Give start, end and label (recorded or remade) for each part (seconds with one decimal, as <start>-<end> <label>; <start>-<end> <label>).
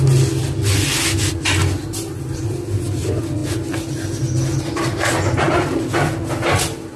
0.0-7.0 recorded